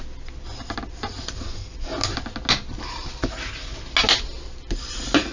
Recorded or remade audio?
recorded